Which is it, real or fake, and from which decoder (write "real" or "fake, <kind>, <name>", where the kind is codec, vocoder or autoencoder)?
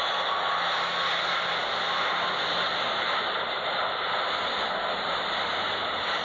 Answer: real